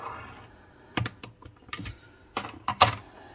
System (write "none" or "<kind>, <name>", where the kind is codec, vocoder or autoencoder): none